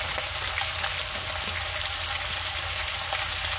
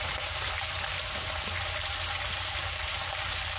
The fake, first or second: second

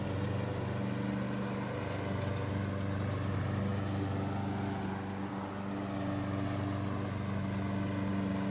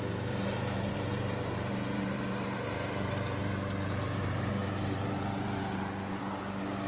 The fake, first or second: second